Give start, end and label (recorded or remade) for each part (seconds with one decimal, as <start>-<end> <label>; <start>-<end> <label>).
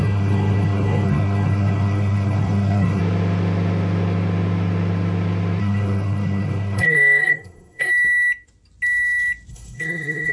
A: 0.0-3.0 remade; 3.0-5.6 recorded; 5.6-7.9 remade; 7.9-9.5 recorded; 9.5-10.3 remade